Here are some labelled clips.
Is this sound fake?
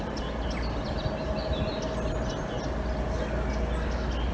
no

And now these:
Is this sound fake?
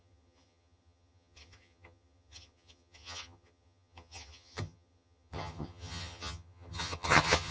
yes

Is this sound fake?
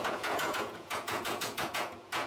yes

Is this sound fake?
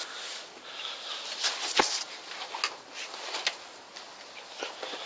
no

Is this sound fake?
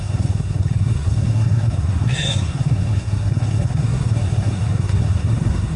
yes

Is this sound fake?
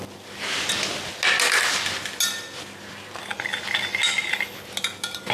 no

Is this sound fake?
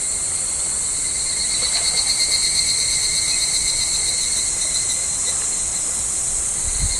no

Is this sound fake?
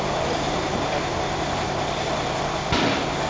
yes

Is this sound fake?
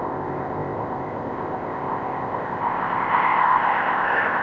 yes